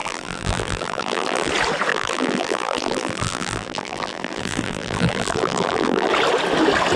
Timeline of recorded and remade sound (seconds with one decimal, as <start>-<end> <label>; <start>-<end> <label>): 0.0-1.5 remade; 1.5-1.9 recorded; 1.9-6.1 remade; 6.1-7.0 recorded